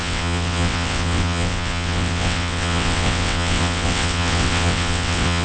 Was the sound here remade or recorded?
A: remade